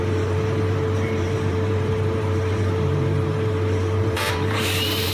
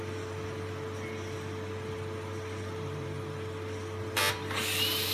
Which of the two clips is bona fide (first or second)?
second